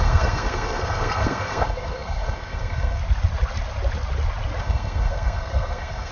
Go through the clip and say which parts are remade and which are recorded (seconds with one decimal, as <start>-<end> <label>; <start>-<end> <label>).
0.0-3.0 remade; 3.0-4.6 recorded; 4.6-6.1 remade